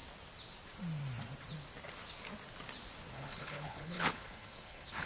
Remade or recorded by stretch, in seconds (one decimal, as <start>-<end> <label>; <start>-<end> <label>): 0.0-3.1 recorded; 3.1-5.1 remade